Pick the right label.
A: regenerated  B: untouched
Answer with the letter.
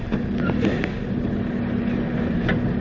B